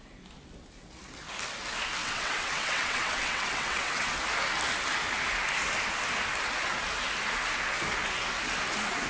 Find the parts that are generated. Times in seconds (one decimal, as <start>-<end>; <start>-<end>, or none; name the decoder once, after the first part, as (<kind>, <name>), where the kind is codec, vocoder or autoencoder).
2.0-4.2 (vocoder, WaveNeXt)